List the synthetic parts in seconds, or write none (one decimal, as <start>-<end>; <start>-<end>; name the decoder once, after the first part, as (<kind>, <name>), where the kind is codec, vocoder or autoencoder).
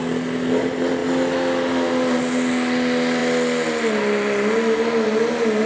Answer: none